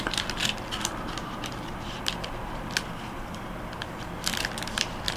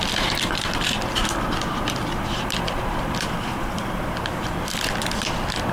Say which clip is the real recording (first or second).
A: first